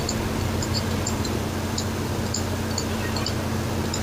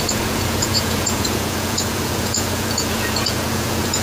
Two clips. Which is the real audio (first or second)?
first